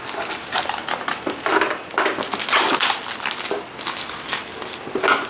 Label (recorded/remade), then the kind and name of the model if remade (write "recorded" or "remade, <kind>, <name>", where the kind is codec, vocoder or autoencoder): recorded